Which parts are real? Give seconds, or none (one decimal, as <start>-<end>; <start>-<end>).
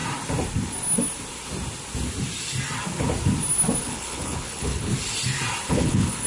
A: 0.0-3.8; 4.9-5.7